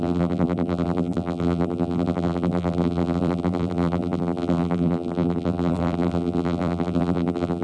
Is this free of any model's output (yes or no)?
no